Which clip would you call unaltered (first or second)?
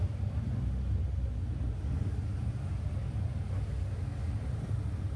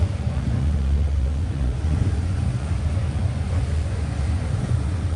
first